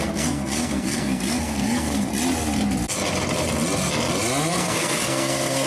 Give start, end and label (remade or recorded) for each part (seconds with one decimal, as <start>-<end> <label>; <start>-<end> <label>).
0.0-2.1 remade; 2.1-4.5 recorded; 4.5-5.7 remade